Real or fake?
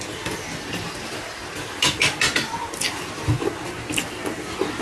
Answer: real